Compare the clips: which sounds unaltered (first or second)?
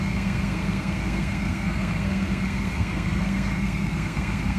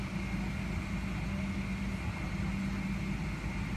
second